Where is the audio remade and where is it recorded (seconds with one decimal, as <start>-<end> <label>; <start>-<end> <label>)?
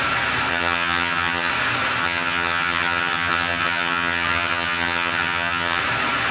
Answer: 0.0-0.5 recorded; 0.5-1.5 remade; 1.5-2.0 recorded; 2.0-5.8 remade; 5.8-6.3 recorded